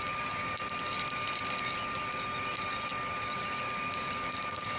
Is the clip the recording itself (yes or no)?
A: yes